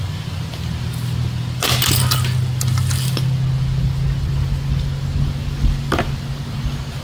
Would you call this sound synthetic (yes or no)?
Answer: no